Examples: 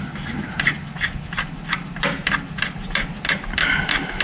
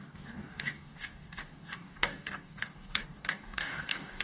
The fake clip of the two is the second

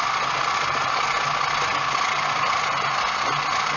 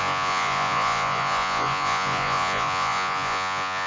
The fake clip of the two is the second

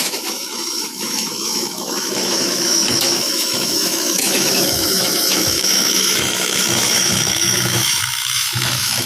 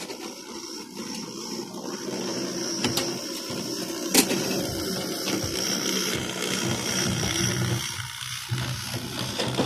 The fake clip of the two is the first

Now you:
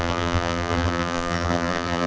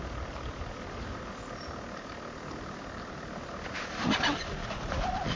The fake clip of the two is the first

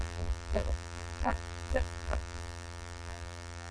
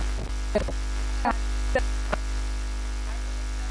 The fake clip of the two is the first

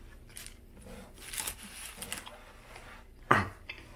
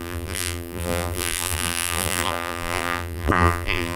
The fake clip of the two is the second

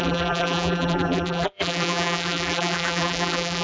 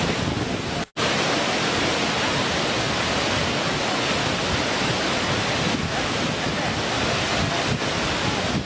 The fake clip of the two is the first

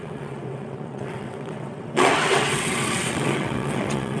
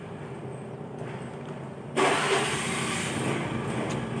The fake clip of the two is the first